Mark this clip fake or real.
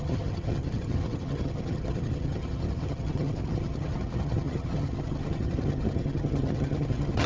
fake